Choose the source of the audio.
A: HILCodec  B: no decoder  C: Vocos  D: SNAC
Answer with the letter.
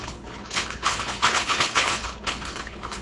A